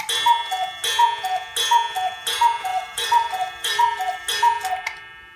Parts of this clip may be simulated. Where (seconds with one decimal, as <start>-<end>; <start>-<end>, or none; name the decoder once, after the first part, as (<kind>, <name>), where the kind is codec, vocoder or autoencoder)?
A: 2.7-4.2 (vocoder, BigVGAN v2)